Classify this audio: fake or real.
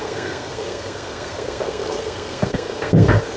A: fake